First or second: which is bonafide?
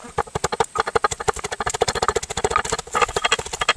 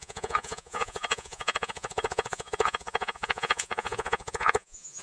first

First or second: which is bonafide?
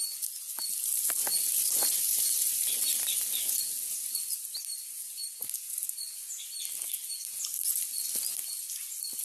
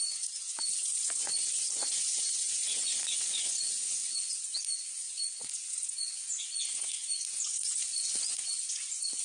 first